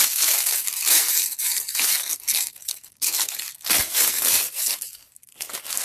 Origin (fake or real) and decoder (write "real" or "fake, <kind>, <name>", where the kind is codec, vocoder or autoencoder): fake, codec, SNAC